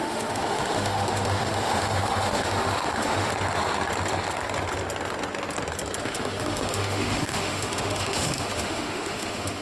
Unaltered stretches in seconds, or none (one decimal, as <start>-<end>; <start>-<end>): 3.3-6.0